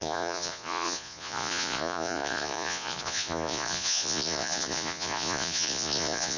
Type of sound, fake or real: fake